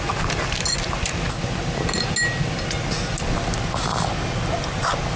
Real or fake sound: real